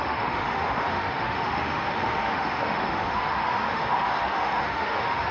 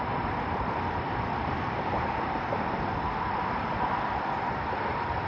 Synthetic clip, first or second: first